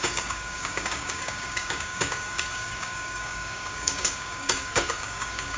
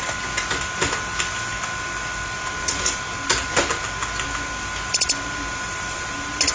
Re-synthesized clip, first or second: first